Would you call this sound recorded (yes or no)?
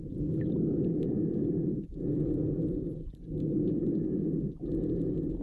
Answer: yes